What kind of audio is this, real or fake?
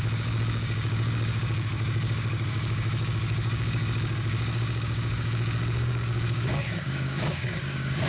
fake